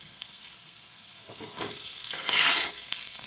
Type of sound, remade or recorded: remade